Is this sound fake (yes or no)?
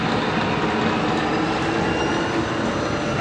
no